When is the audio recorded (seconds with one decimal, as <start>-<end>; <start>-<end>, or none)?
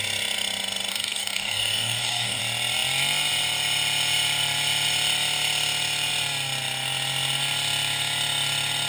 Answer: 0.0-0.9; 2.4-8.9